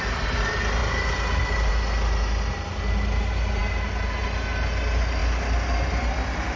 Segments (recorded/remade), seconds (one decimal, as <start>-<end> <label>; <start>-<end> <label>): 0.0-6.6 recorded